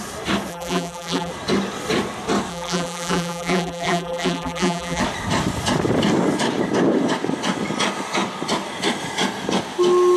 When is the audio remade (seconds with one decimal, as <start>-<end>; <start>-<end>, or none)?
0.5-1.3; 2.5-5.0